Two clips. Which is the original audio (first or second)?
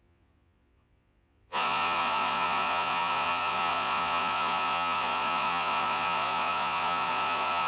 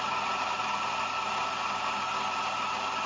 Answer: second